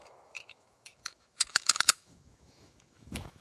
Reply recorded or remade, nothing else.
remade